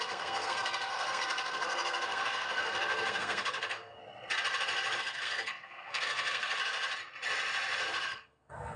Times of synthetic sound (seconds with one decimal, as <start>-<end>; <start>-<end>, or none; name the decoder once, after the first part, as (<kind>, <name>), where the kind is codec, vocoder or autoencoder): 0.0-4.0 (codec, SNAC); 5.0-6.6; 8.1-8.8

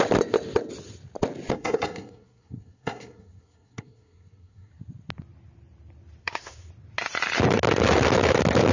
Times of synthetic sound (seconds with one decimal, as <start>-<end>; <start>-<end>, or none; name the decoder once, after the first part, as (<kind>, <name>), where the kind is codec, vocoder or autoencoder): 1.5-4.7 (codec, SNAC); 6.2-6.7

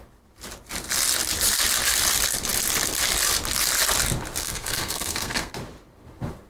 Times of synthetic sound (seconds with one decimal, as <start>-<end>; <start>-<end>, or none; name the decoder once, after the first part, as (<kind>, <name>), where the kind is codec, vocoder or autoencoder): 4.4-5.5 (codec, SNAC)

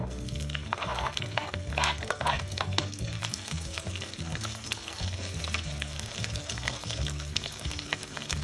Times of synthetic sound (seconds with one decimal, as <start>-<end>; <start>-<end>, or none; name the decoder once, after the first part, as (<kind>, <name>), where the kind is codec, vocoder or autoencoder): 0.0-8.4 (codec, SNAC)

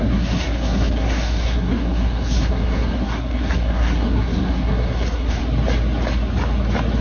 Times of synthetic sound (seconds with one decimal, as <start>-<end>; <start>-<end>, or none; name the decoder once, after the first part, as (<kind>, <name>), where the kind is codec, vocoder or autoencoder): 0.0-5.4 (codec, SNAC)

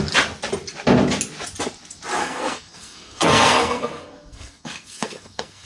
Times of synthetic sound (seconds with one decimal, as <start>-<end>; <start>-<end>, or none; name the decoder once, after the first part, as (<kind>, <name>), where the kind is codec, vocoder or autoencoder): 2.2-5.7 (codec, SNAC)